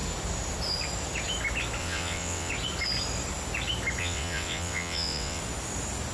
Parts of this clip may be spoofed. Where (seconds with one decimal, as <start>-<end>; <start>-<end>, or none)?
1.8-2.5; 4.0-5.4